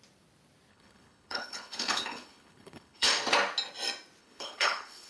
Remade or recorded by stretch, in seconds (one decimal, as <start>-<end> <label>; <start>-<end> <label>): 0.0-0.7 recorded; 0.7-3.1 remade; 3.1-4.2 recorded; 4.2-5.1 remade